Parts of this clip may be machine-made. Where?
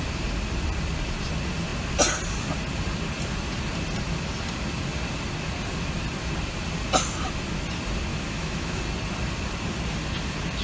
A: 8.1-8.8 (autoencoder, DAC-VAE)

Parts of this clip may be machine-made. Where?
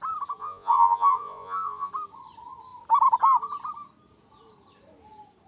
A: 0.4-1.9 (vocoder, Vocos)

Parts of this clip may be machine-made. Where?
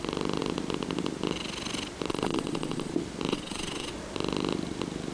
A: 2.1-2.9 (vocoder, Vocos); 3.3-3.9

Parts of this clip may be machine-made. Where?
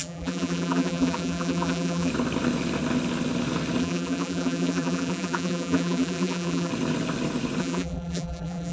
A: 0.0-2.1 (vocoder, BigVGAN v2); 3.8-6.7; 7.6-8.7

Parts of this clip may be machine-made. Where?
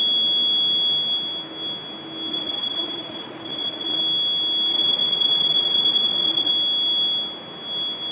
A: 2.3-4.0 (vocoder, Vocos); 4.7-6.5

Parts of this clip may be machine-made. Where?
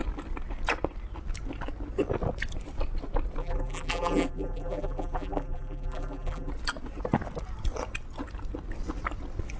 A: 3.4-6.5 (vocoder, BigVGAN v2)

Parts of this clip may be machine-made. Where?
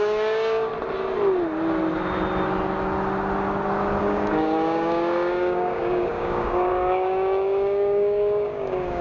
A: 0.0-0.7 (codec, DAC); 4.0-9.0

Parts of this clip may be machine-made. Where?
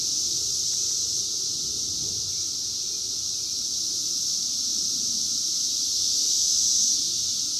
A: 4.3-6.6 (vocoder, BigVGAN v2)